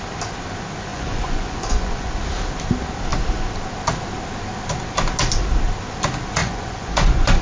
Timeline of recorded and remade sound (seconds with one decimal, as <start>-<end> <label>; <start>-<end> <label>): 0.0-0.9 recorded; 0.9-2.1 remade; 2.1-6.4 recorded; 6.4-7.4 remade